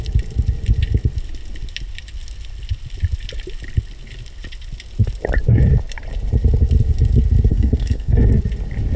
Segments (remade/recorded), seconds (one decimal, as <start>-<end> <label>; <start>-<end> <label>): 0.0-7.5 recorded; 7.5-8.2 remade; 8.2-9.0 recorded